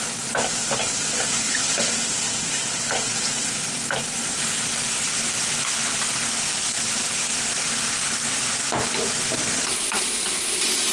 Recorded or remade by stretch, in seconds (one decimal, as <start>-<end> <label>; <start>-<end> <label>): 0.0-10.9 recorded